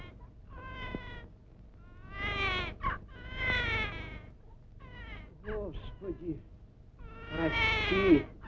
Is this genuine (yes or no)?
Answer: yes